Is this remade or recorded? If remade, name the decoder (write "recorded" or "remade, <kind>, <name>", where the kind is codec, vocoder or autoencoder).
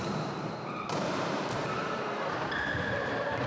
remade, vocoder, BigVGAN v2